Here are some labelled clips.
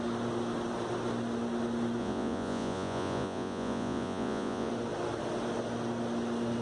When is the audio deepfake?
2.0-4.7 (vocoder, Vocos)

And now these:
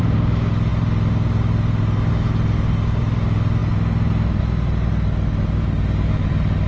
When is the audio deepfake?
none

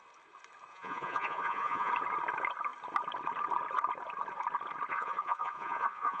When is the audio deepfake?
0.7-1.9 (vocoder, Vocos); 4.9-6.2

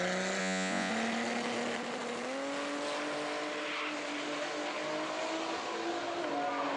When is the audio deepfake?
0.4-0.9 (vocoder, Vocos)

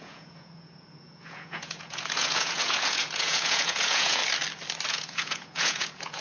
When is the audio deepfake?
0.0-4.2 (vocoder, Vocos); 4.9-6.2

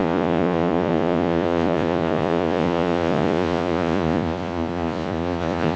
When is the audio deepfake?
0.0-5.8 (vocoder, Vocos)

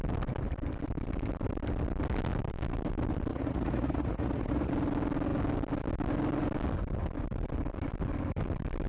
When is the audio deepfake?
3.3-4.7 (vocoder, Vocos)

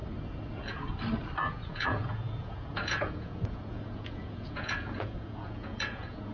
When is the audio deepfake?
1.5-6.3 (vocoder, Vocos)